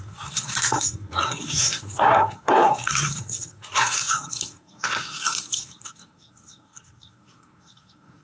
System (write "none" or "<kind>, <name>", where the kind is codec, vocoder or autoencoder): codec, SNAC